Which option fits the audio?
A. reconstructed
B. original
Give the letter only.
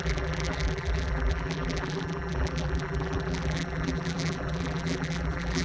A